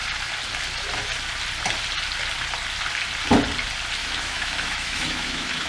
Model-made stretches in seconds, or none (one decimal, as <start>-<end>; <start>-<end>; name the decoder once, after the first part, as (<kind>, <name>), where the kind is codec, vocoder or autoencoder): 4.0-5.7 (autoencoder, DAC-VAE)